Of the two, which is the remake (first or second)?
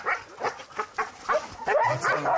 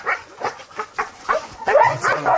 second